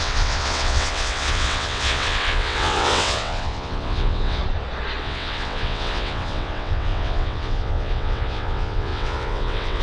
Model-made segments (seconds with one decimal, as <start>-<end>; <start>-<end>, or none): 0.0-4.4; 5.0-9.8

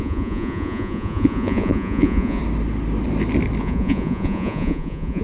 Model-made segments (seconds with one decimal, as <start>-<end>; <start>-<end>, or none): 0.0-2.4; 3.6-5.2